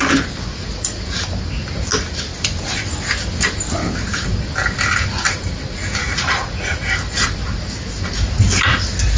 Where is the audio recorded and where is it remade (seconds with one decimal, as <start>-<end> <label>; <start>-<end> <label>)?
0.0-6.0 recorded; 6.0-6.8 remade; 6.8-9.2 recorded